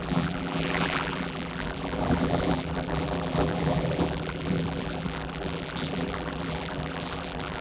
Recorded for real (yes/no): no